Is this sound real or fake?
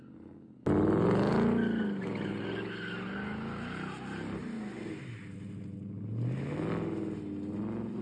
real